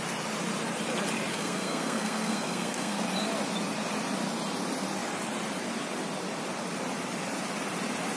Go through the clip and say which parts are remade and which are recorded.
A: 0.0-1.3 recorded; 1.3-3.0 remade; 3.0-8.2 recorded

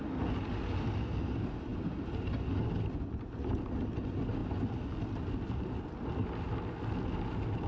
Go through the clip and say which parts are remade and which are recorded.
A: 0.0-7.7 recorded

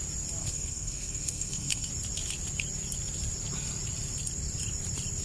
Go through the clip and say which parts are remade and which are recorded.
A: 0.0-0.4 recorded; 0.4-1.9 remade; 1.9-5.2 recorded

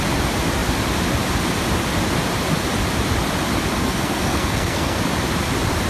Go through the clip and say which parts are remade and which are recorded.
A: 0.0-3.8 recorded; 3.8-5.0 remade; 5.0-5.9 recorded